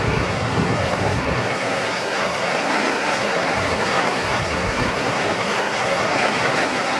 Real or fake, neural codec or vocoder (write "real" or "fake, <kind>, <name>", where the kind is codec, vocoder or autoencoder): fake, codec, SNAC